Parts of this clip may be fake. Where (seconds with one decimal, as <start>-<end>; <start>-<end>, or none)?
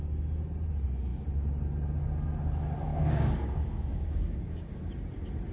2.9-4.7